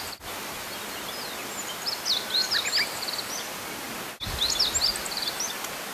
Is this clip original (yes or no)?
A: yes